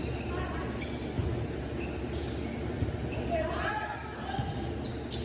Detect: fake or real real